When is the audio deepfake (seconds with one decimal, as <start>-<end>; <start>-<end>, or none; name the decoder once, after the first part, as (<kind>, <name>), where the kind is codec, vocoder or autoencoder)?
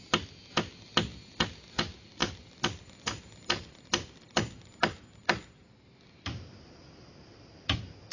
none